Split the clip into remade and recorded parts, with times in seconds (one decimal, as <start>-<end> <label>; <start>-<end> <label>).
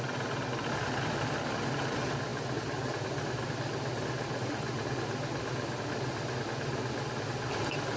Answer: 0.0-8.0 recorded